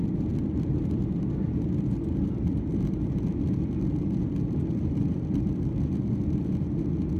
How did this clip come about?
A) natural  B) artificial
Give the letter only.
A